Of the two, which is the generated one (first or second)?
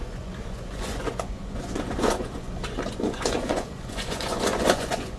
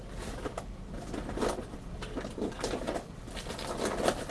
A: first